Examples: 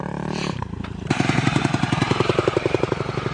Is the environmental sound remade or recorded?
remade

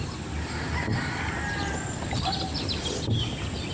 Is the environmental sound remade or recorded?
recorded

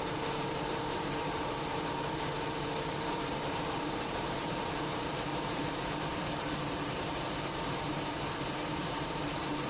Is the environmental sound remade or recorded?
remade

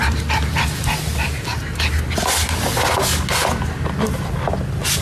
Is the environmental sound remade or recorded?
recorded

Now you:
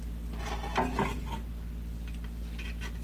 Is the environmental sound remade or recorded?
recorded